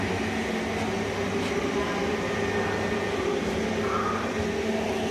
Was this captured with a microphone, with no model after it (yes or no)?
yes